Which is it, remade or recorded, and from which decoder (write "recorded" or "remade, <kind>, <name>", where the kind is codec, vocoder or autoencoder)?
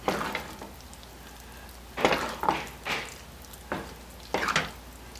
recorded